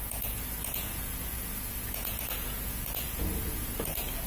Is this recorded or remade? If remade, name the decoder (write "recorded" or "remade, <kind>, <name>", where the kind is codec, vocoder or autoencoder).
remade, vocoder, Vocos